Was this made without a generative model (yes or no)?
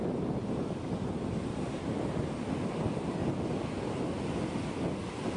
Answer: yes